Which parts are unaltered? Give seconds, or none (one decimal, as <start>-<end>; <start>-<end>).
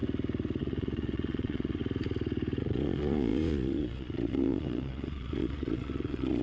0.0-0.6; 1.8-2.6